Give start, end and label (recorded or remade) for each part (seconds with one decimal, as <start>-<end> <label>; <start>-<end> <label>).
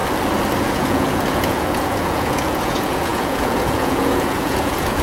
0.0-0.6 recorded; 0.6-5.0 remade